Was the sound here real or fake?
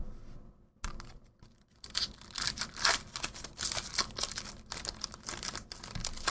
real